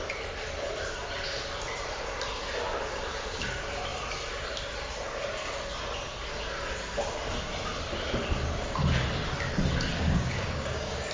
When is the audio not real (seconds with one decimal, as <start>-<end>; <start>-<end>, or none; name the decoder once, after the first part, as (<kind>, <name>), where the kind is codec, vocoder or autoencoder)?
9.9-11.1 (codec, DAC)